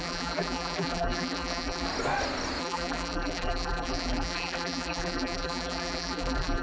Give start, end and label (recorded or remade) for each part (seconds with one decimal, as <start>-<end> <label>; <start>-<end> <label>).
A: 0.0-1.9 remade; 1.9-2.6 recorded; 2.6-6.6 remade